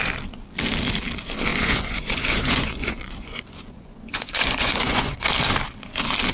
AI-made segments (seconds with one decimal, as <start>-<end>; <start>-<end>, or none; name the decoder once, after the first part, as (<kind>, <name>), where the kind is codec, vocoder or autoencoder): 1.5-5.3 (vocoder, Vocos)